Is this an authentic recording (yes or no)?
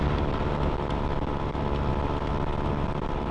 yes